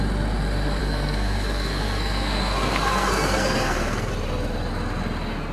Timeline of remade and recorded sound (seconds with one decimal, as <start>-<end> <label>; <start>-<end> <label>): 0.0-0.8 recorded; 0.8-4.1 remade; 4.1-5.5 recorded